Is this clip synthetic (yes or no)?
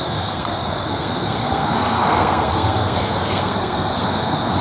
yes